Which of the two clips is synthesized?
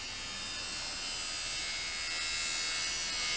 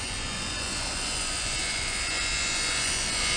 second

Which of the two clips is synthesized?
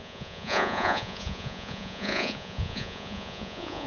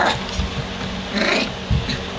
first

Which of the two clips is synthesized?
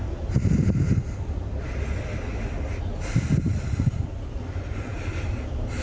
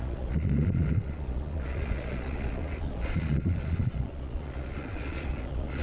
second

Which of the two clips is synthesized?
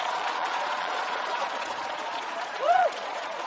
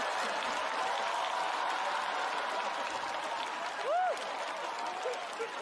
first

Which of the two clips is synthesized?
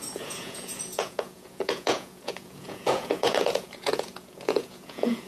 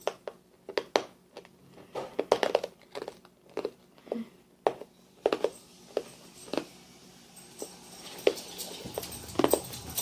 first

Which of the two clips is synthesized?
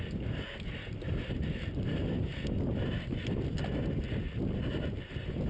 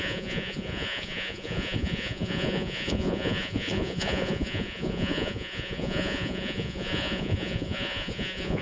second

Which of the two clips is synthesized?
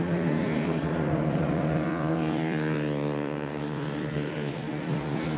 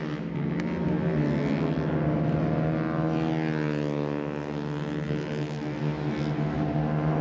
first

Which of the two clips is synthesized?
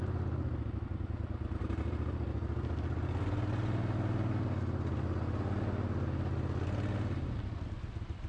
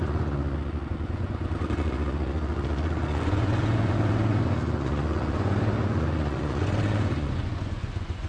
second